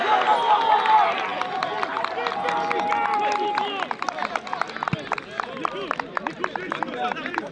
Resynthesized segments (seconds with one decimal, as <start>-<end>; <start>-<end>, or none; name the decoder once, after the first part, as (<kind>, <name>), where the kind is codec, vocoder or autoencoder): none